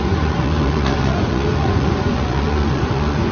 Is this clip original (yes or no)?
no